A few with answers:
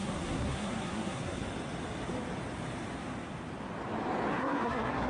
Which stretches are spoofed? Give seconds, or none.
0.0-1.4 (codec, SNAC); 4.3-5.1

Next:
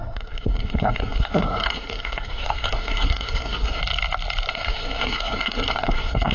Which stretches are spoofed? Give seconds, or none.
0.0-3.8 (codec, SNAC); 4.5-6.3